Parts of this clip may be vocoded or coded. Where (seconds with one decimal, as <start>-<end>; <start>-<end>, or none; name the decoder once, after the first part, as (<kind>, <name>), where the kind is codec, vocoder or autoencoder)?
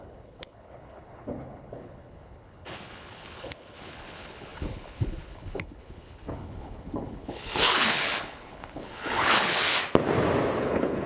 0.0-9.7 (codec, HILCodec); 10.6-11.1